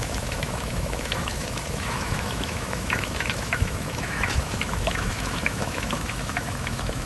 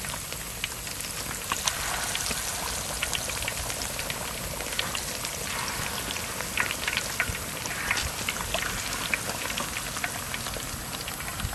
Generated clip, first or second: first